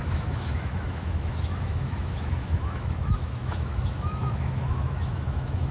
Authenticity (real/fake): fake